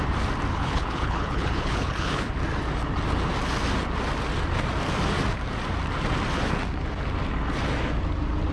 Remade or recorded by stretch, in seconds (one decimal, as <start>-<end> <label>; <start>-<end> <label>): 0.0-0.5 recorded; 0.5-2.3 remade; 2.3-8.5 recorded